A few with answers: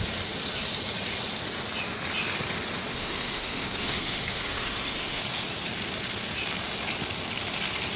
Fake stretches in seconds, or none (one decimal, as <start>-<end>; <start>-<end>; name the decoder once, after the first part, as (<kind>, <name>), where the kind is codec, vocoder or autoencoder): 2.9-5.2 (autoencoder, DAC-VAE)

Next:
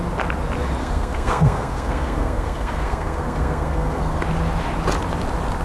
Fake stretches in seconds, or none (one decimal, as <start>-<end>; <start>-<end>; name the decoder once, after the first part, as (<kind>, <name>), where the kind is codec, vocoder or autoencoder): 0.8-4.2 (codec, SNAC)

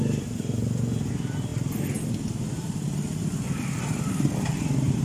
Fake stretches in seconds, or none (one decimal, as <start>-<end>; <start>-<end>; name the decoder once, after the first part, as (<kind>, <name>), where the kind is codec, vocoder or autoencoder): none

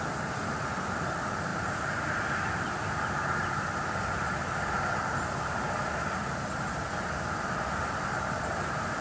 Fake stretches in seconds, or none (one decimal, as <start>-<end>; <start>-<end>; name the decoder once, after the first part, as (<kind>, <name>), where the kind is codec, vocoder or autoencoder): none

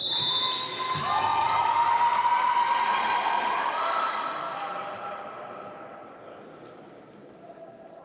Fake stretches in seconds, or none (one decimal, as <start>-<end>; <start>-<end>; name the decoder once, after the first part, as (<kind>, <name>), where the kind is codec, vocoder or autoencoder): 1.3-6.1 (vocoder, BigVGAN v2)

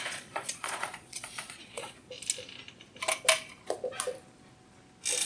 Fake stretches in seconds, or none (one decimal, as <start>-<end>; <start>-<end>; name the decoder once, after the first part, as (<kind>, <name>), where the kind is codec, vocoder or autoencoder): 0.0-2.0 (vocoder, Vocos)